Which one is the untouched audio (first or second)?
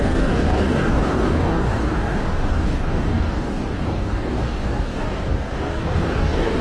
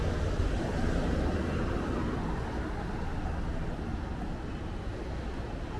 second